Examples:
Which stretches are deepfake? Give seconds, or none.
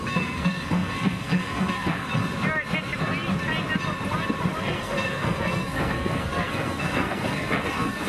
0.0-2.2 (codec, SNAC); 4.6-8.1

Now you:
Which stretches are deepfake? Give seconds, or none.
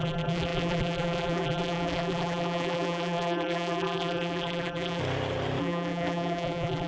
0.0-5.0 (vocoder, BigVGAN v2); 5.6-6.9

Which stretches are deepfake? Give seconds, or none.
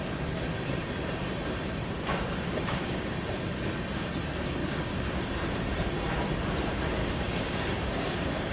1.8-3.1 (codec, DAC); 4.6-5.2; 7.0-8.5